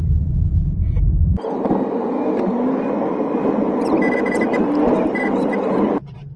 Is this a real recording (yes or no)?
no